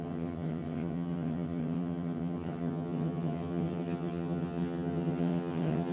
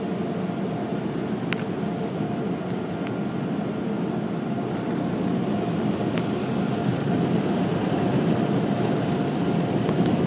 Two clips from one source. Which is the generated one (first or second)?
first